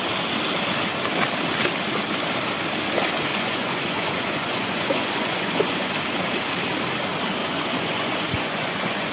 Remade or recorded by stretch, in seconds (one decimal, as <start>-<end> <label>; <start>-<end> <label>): 0.0-3.3 recorded; 3.3-5.9 remade; 5.9-7.4 recorded; 7.4-9.1 remade

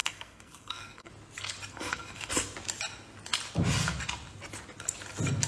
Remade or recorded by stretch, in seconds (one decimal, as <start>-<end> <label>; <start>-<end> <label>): 0.0-1.1 remade; 1.1-1.7 recorded; 1.7-2.3 remade; 2.3-5.5 recorded

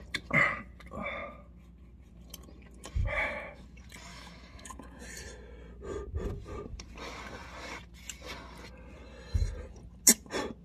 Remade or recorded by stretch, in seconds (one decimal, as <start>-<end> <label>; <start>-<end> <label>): 0.0-3.0 recorded; 3.0-3.6 remade; 3.6-4.1 recorded; 4.1-5.0 remade; 5.0-10.6 recorded